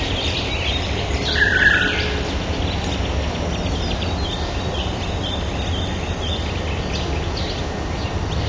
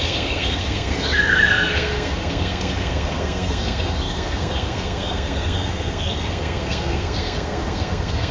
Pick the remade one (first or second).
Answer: second